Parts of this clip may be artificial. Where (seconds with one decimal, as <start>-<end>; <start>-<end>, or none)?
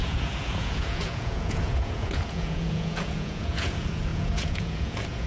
0.0-5.3